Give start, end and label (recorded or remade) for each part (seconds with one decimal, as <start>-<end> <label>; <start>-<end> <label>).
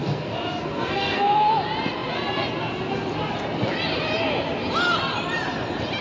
0.0-1.5 remade; 1.5-6.0 recorded